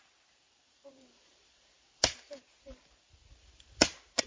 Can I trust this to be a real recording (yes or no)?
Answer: no